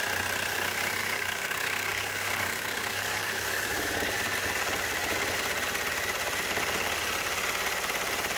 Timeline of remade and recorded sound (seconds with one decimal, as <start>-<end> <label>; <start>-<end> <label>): 0.0-1.0 recorded; 1.0-4.1 remade; 4.1-8.4 recorded